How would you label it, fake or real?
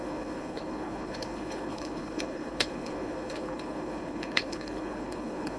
fake